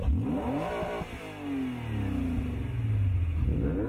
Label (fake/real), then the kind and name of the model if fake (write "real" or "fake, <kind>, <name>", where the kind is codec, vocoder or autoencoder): real